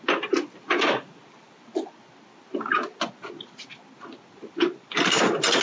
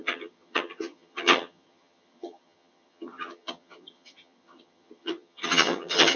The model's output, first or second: second